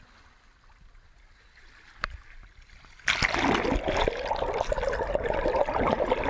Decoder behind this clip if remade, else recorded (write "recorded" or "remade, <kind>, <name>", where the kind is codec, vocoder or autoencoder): recorded